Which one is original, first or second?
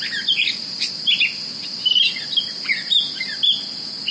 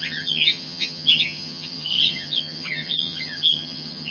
first